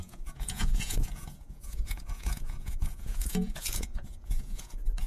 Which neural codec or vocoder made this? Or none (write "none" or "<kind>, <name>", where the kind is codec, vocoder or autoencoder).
vocoder, Vocos